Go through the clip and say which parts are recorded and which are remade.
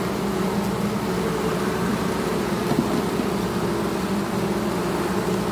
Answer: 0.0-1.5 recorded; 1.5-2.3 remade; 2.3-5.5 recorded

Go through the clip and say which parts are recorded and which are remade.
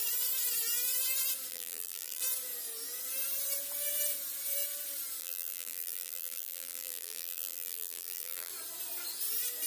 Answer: 0.0-1.5 recorded; 1.5-2.2 remade; 2.2-5.2 recorded; 5.2-8.5 remade; 8.5-9.7 recorded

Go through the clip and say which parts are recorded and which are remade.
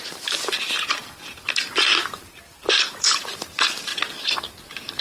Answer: 0.0-0.5 remade; 0.5-2.4 recorded; 2.4-3.9 remade; 3.9-5.0 recorded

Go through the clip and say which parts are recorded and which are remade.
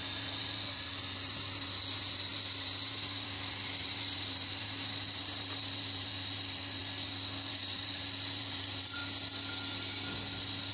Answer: 0.0-6.8 remade; 6.8-7.5 recorded; 7.5-9.0 remade; 9.0-10.7 recorded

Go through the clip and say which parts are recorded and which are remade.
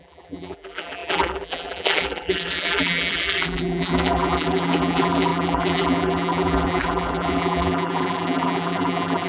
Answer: 0.0-9.3 remade